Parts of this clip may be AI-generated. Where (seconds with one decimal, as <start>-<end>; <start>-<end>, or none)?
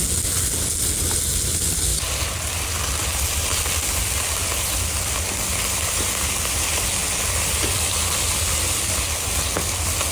none